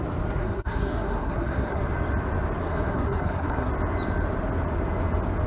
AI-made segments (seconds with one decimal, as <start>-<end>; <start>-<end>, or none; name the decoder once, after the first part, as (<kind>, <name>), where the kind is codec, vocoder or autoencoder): 0.4-1.8 (codec, SNAC); 2.6-3.7